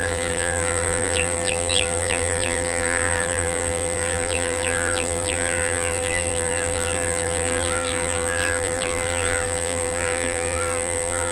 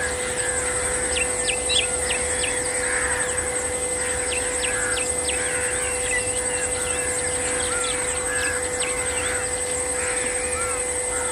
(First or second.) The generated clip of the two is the first